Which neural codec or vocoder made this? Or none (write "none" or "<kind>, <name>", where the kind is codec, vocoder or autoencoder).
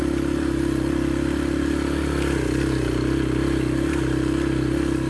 none